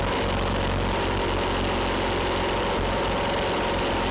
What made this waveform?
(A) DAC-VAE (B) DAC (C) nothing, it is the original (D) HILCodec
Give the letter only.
C